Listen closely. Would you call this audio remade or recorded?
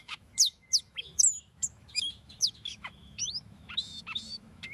remade